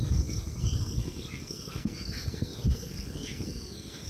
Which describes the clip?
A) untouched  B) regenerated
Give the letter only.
B